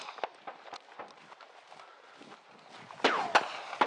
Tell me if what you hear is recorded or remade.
recorded